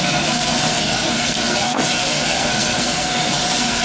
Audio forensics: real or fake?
fake